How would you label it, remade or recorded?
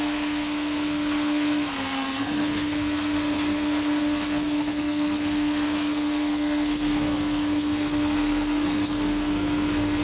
remade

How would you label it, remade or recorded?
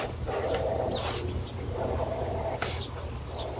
recorded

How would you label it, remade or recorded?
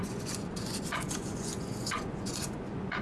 remade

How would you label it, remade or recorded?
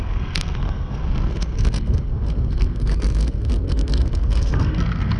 remade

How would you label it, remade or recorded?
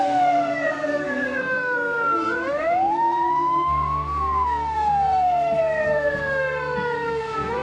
remade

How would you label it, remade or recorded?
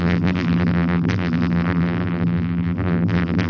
remade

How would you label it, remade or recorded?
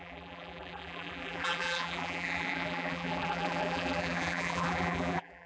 remade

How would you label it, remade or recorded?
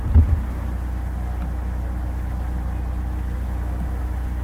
recorded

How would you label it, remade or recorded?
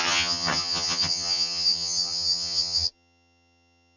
remade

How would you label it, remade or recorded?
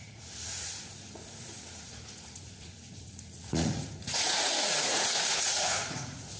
remade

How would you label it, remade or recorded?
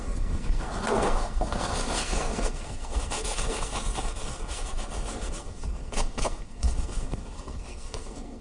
remade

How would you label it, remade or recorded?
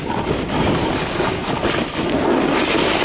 recorded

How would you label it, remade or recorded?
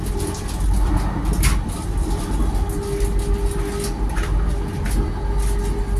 recorded